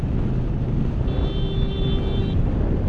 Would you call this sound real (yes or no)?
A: yes